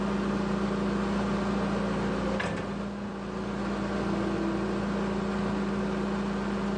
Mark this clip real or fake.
real